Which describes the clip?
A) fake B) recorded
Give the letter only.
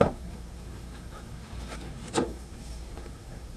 A